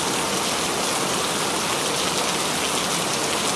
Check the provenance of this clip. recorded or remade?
recorded